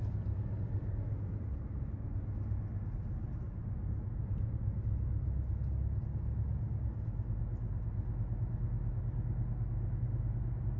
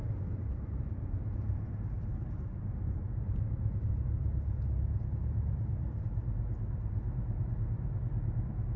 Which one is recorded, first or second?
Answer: first